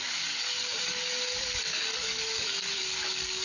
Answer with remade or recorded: remade